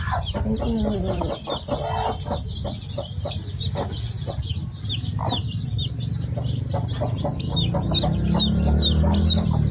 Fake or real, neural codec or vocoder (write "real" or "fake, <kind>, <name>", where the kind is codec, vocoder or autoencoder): real